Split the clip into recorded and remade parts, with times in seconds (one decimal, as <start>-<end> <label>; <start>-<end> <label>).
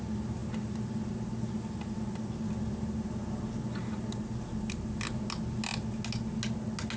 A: 0.0-7.0 recorded